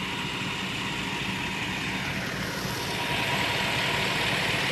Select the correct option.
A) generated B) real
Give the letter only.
B